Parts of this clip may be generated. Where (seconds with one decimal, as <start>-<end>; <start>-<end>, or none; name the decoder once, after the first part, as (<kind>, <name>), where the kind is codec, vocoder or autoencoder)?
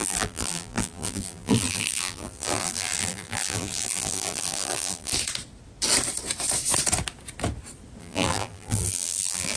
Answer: 0.0-5.1 (vocoder, BigVGAN v2); 8.0-9.6